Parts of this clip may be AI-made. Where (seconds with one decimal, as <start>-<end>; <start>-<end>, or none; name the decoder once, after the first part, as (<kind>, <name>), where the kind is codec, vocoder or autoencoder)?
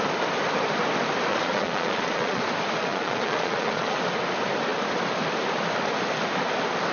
1.3-2.4 (vocoder, Vocos); 2.9-4.0